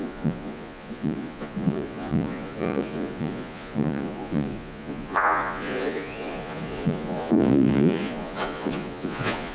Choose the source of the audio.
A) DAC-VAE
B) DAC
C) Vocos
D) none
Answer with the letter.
C